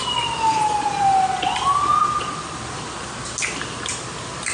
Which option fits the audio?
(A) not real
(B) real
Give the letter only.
B